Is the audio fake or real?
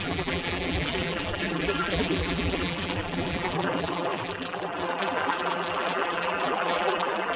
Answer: fake